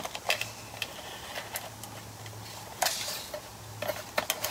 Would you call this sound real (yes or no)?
yes